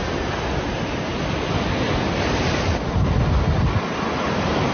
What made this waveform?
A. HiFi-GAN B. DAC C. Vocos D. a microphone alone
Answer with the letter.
D